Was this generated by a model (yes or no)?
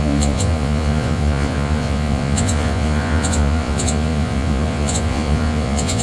yes